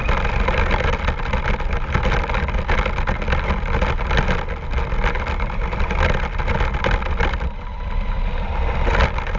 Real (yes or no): yes